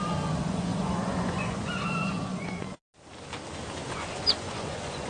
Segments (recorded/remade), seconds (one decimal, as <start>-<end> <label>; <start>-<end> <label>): 0.0-2.8 remade; 2.8-3.9 recorded; 3.9-5.1 remade